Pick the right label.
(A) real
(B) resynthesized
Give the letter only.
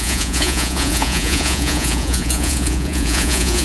B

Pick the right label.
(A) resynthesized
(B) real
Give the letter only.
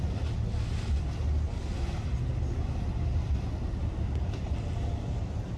B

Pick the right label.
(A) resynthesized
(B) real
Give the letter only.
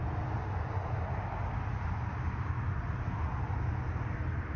B